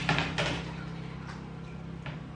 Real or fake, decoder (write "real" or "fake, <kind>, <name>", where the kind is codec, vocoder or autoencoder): real